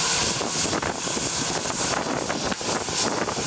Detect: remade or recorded recorded